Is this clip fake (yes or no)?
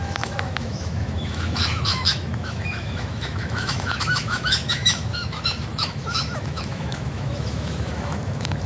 yes